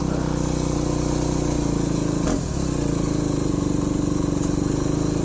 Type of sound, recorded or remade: recorded